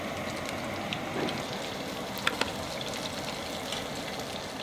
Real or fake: real